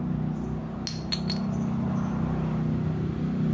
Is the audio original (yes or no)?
yes